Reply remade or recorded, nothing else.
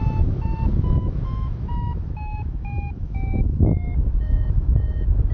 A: remade